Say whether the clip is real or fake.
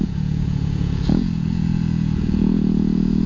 fake